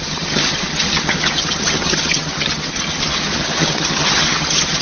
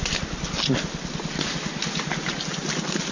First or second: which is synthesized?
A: first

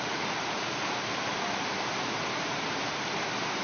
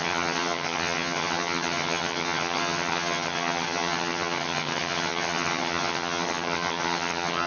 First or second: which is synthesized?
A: second